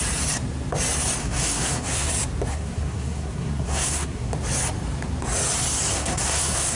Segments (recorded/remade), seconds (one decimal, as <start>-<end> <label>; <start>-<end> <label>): 0.0-1.2 recorded; 1.2-2.1 remade; 2.1-2.5 recorded; 2.5-4.3 remade; 4.3-5.9 recorded; 5.9-6.8 remade